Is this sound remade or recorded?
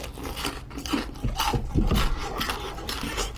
recorded